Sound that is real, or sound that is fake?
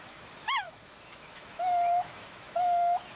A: fake